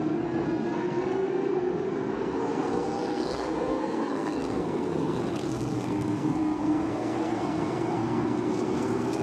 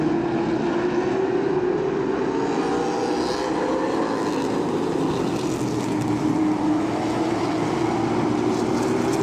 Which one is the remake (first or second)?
first